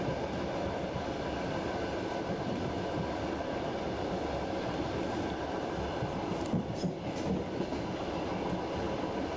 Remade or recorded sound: recorded